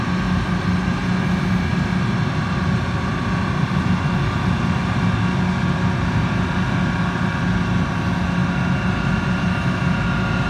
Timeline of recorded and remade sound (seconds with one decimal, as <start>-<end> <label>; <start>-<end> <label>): 0.0-10.5 recorded